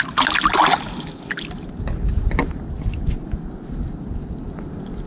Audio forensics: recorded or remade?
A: recorded